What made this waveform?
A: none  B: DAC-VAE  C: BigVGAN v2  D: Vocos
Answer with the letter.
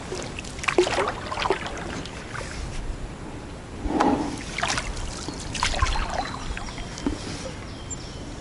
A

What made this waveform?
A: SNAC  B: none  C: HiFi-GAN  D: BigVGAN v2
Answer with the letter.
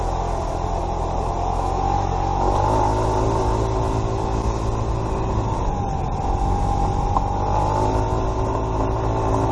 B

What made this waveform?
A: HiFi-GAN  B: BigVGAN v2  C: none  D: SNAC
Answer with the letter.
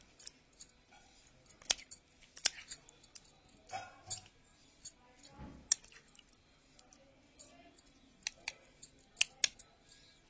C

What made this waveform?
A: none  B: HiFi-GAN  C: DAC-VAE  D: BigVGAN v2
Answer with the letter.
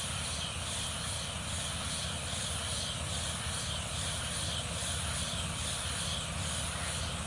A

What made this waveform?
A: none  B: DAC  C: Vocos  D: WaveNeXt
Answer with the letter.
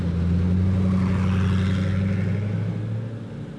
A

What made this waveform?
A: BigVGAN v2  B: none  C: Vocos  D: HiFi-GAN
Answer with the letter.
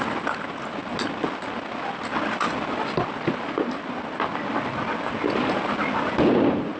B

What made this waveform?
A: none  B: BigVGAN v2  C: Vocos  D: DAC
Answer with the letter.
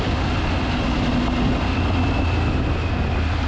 A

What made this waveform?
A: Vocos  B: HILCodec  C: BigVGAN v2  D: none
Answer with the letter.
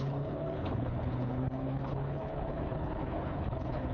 B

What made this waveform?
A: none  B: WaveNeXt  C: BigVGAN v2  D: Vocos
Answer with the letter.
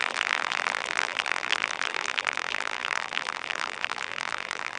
C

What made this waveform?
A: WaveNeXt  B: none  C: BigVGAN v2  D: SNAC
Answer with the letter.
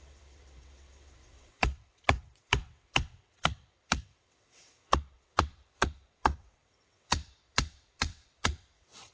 A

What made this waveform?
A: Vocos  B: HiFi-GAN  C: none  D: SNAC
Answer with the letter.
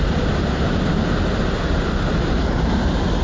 C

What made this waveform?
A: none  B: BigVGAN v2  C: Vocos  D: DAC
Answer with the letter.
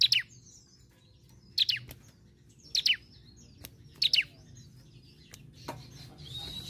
A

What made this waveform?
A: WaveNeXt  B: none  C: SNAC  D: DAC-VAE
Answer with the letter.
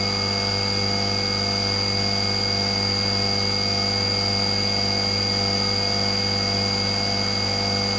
B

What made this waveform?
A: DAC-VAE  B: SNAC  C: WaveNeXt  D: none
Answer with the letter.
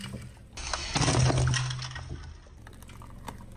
D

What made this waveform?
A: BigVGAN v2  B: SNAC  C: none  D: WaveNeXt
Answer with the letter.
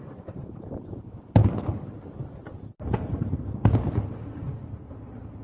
C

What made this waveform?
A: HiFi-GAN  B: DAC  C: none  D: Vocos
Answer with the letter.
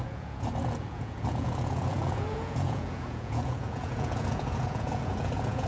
D